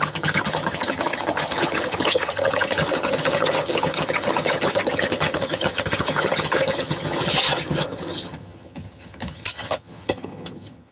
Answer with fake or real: fake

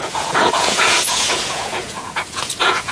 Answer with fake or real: fake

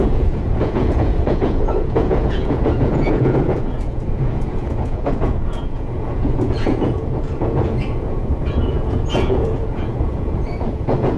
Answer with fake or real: fake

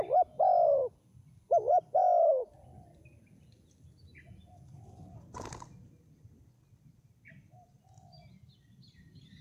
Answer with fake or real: real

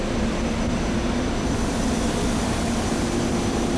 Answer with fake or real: real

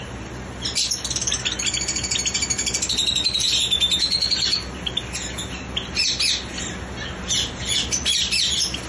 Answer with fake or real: real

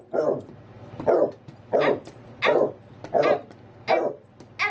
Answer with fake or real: real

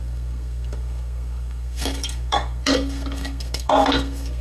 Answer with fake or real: fake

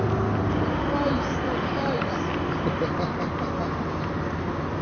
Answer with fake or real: real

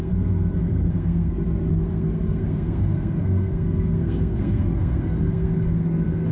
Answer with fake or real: fake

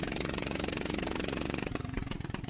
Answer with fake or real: fake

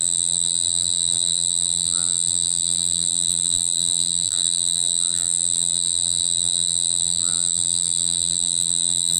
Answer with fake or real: fake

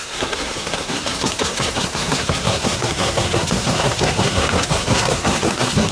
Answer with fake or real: fake